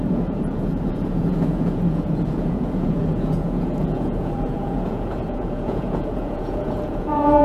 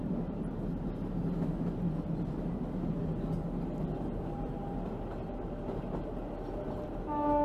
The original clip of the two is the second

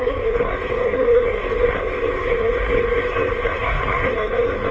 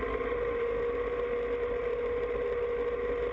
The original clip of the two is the second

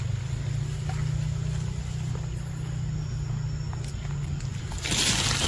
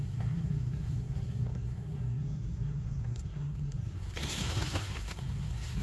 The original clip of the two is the first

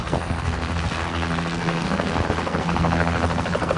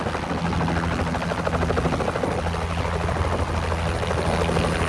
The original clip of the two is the second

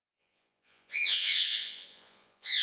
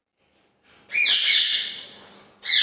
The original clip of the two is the second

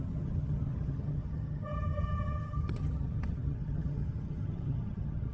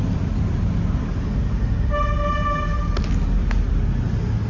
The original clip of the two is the second